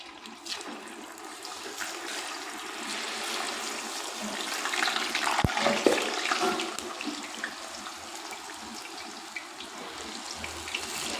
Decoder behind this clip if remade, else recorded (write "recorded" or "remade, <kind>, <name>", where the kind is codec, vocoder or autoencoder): recorded